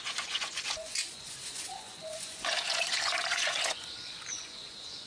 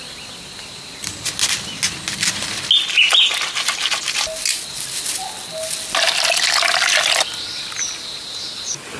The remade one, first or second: first